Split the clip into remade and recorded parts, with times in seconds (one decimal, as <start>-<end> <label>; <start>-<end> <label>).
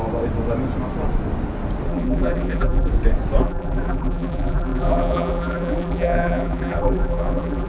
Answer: 0.0-1.9 recorded; 1.9-2.9 remade; 2.9-3.4 recorded; 3.4-7.7 remade